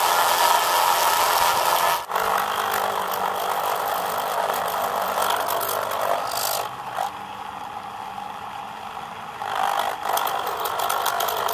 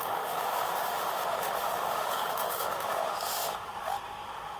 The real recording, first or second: first